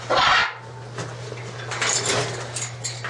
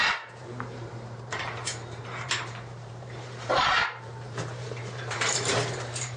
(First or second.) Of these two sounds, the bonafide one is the first